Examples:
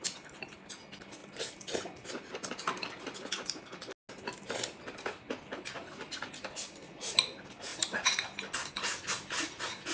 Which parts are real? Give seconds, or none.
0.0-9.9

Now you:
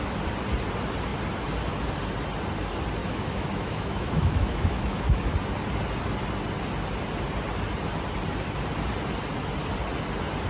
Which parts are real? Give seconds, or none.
0.0-3.0; 5.3-10.5

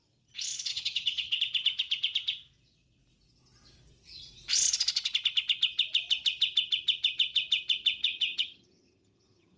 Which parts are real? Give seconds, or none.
0.0-0.7; 1.4-8.0

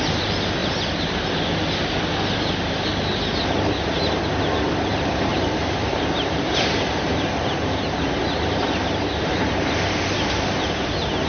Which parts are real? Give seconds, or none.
0.0-0.6; 1.4-5.3; 10.0-11.3

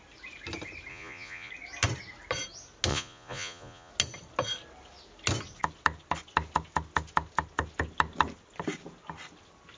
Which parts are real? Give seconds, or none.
0.0-0.9; 1.5-2.9; 3.9-9.8

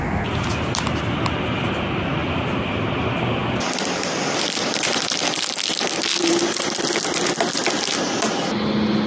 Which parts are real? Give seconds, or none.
0.0-3.4; 7.2-9.1

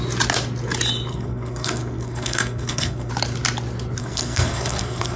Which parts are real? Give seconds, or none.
0.0-1.1; 3.1-4.0

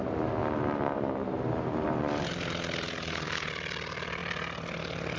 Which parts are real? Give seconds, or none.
0.0-0.4; 3.5-5.2